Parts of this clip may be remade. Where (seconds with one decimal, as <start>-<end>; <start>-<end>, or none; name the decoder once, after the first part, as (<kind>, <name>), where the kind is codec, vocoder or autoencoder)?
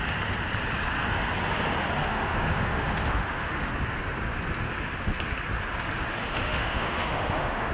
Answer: 2.1-3.7 (autoencoder, DAC-VAE); 6.2-7.7